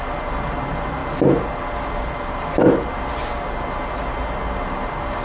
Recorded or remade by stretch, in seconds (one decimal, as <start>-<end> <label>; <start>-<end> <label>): 0.0-1.0 recorded; 1.0-4.1 remade; 4.1-5.2 recorded